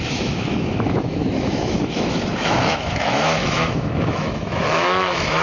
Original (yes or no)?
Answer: no